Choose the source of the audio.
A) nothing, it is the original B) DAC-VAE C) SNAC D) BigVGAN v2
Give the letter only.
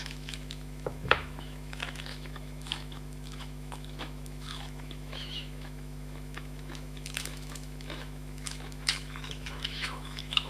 B